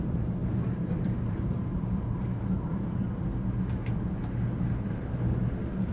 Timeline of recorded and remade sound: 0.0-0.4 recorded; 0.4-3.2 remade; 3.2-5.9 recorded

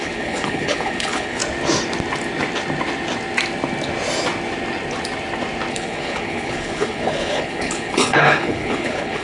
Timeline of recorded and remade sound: 0.0-1.4 remade; 1.4-5.7 recorded; 5.7-9.2 remade

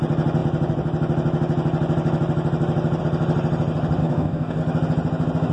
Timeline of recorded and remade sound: 0.0-4.0 recorded; 4.0-4.6 remade; 4.6-5.5 recorded

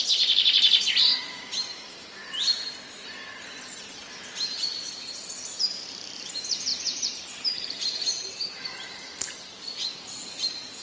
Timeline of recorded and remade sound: 0.0-2.2 remade; 2.2-3.4 recorded; 3.4-4.0 remade; 4.0-4.5 recorded; 4.5-10.8 remade

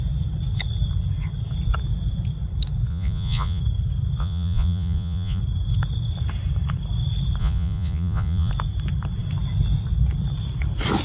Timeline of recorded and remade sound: 0.0-2.9 recorded; 2.9-3.6 remade; 3.6-4.2 recorded; 4.2-5.4 remade; 5.4-7.4 recorded; 7.4-8.5 remade; 8.5-11.0 recorded

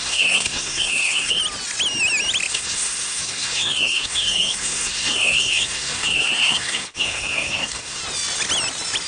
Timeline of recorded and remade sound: 0.0-1.4 remade; 1.4-2.5 recorded; 2.5-8.0 remade; 8.0-9.1 recorded